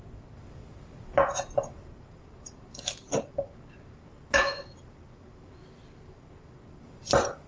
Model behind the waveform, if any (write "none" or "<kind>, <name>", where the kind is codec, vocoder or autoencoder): none